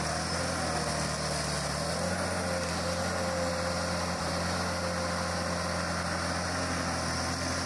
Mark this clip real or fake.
real